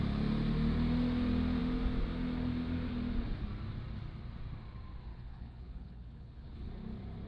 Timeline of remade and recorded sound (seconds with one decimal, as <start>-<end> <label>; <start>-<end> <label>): 0.0-5.1 recorded; 5.1-6.7 remade; 6.7-7.3 recorded